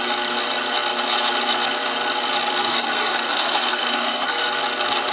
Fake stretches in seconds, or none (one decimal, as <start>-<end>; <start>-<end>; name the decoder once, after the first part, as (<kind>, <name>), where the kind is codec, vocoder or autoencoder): 2.6-4.5 (codec, SNAC)

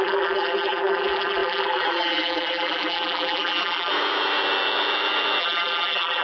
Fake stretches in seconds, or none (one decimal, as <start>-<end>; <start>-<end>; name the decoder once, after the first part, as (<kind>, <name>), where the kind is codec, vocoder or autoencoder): 0.0-3.9 (vocoder, BigVGAN v2); 5.4-6.2

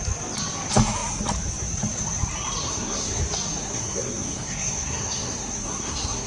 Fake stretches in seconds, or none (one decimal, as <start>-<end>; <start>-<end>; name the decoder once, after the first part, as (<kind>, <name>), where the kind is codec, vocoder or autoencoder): 2.7-3.2 (codec, SNAC); 3.6-6.3

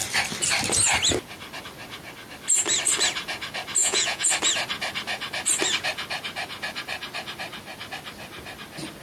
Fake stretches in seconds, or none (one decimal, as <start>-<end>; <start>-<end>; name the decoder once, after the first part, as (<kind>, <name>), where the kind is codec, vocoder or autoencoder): 3.8-4.3 (vocoder, Vocos)

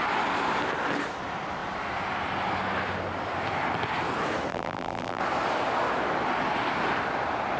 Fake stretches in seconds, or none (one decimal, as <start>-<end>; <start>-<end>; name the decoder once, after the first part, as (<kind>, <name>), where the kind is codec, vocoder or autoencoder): 4.5-5.2 (vocoder, BigVGAN v2)

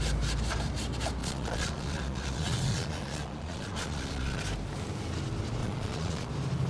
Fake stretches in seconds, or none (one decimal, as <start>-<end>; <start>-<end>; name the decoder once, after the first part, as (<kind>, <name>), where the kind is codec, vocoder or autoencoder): 1.2-4.4 (vocoder, Vocos); 5.6-6.3